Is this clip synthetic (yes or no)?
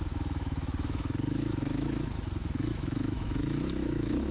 yes